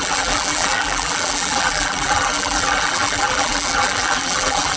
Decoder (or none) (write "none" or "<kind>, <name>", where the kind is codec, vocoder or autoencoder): vocoder, BigVGAN v2